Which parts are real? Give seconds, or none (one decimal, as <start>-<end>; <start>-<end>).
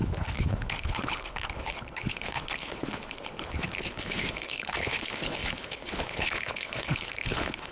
none